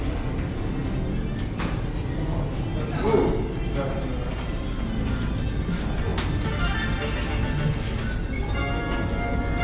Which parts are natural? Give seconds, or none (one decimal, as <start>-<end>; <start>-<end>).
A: 0.0-9.6